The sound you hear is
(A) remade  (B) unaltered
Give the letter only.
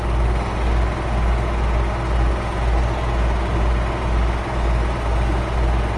B